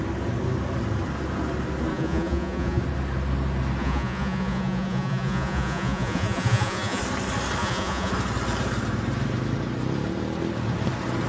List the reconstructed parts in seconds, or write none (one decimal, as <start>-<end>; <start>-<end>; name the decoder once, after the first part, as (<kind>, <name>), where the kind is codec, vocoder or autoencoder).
1.9-2.8 (vocoder, Vocos); 3.8-7.0; 7.6-8.1